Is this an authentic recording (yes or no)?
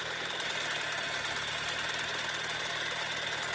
yes